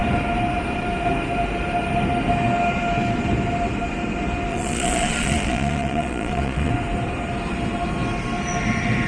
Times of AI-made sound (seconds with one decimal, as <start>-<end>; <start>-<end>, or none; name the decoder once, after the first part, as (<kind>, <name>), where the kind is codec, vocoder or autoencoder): 4.5-6.7 (vocoder, Vocos)